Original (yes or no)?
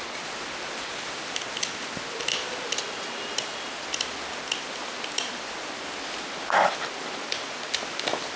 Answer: yes